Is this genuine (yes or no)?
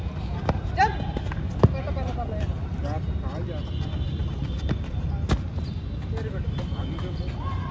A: yes